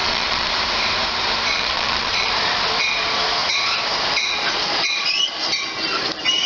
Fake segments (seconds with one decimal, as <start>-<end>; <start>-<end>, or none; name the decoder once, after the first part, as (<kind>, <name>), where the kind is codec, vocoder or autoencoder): 0.0-0.5 (vocoder, Vocos); 1.5-2.3